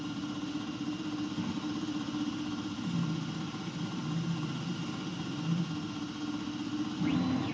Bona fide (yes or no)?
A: yes